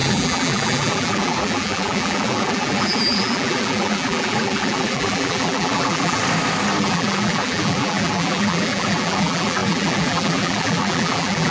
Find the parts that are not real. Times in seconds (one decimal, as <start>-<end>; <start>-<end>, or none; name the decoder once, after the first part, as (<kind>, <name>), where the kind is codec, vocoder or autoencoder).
0.0-6.2 (vocoder, BigVGAN v2); 6.8-11.5